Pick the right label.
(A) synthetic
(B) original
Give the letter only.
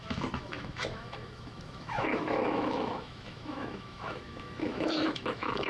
A